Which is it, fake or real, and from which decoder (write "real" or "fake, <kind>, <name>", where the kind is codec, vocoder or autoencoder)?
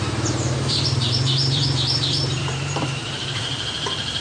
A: fake, vocoder, BigVGAN v2